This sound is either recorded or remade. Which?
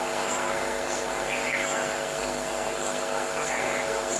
remade